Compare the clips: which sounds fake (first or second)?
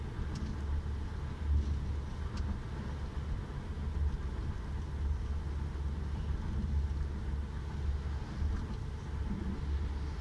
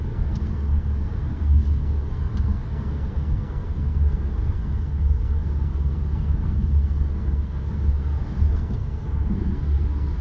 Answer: second